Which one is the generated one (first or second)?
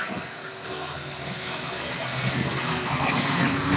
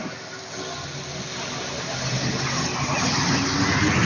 first